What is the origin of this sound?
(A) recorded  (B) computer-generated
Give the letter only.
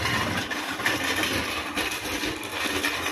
A